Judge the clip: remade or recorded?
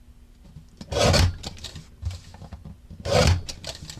recorded